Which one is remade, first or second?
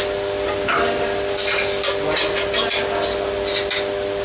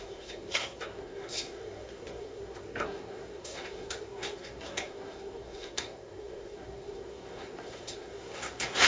second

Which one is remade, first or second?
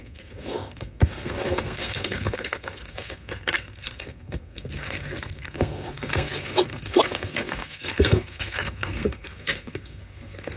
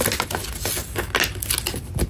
first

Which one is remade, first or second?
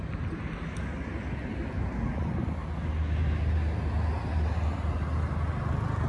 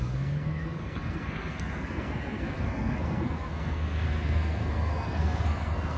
second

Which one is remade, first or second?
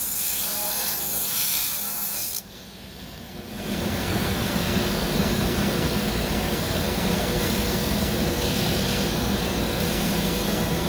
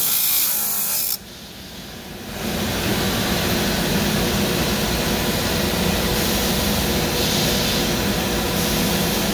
first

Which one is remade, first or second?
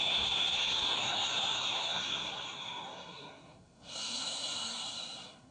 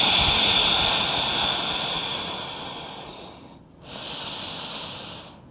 first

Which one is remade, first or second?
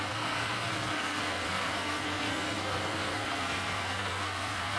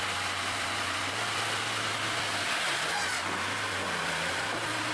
first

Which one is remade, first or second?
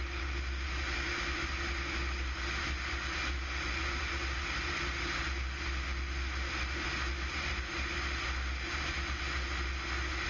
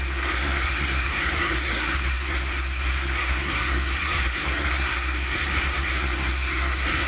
second